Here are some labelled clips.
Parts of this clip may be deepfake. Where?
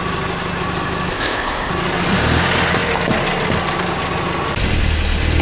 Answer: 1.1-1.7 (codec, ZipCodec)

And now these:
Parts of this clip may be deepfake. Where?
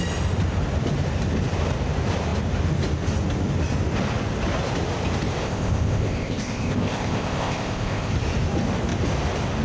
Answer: 5.4-8.1 (codec, ZipCodec)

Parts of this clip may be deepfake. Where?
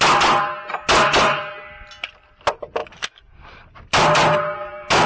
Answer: none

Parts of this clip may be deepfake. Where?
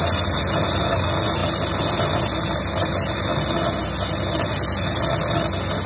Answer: none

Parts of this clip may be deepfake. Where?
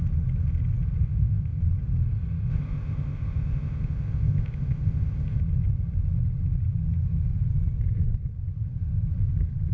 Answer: 1.0-1.6 (codec, ZipCodec); 2.5-5.4